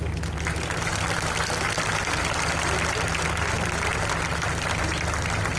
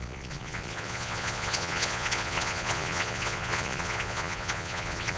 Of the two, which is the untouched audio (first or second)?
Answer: first